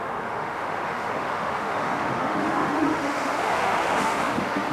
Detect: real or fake fake